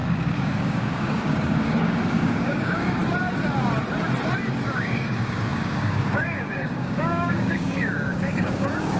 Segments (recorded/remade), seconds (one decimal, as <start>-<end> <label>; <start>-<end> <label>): 0.0-3.0 remade; 3.0-4.7 recorded; 4.7-9.0 remade